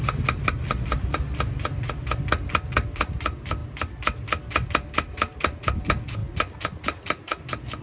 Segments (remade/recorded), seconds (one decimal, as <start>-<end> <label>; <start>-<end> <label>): 0.0-7.8 recorded